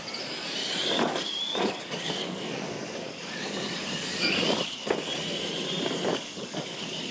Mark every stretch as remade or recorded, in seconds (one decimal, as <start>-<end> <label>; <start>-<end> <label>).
0.0-0.6 recorded; 0.6-4.9 remade; 4.9-6.1 recorded; 6.1-7.1 remade